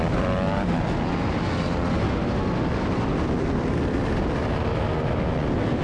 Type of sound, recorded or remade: recorded